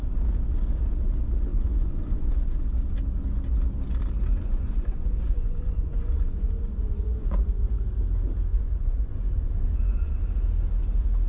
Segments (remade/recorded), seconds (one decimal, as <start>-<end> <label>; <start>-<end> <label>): 0.0-1.5 recorded; 1.5-2.3 remade; 2.3-4.3 recorded; 4.3-7.7 remade; 7.7-8.5 recorded; 8.5-10.2 remade; 10.2-11.3 recorded